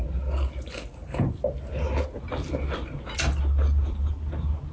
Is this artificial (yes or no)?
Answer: no